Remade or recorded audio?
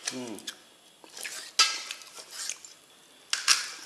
recorded